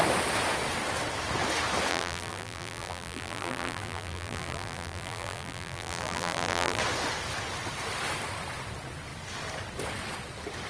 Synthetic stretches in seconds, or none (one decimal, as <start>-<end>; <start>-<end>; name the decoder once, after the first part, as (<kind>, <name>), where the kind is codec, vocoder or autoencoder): 1.9-6.8 (vocoder, BigVGAN v2)